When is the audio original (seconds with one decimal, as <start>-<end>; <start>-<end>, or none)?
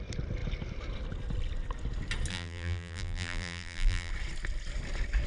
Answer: 0.0-2.3; 4.1-5.3